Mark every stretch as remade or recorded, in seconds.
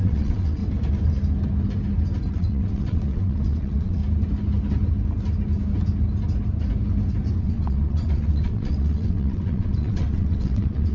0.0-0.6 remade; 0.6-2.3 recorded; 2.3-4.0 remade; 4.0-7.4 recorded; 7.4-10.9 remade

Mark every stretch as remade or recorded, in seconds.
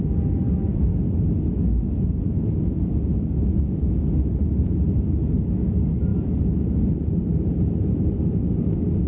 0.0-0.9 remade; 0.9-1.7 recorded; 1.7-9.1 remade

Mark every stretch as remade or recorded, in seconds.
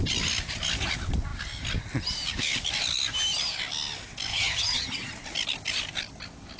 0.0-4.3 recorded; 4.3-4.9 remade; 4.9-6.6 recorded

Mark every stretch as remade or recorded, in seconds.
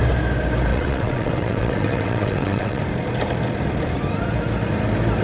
0.0-0.7 recorded; 0.7-2.8 remade; 2.8-5.2 recorded